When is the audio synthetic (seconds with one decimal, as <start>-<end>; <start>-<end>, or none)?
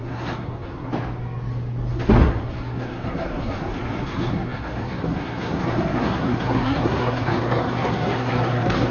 0.0-0.9; 1.9-8.9